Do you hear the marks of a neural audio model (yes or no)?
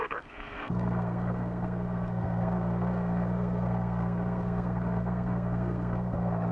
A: yes